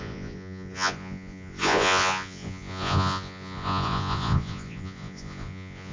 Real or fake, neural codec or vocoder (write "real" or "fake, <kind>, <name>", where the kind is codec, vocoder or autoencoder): fake, vocoder, Vocos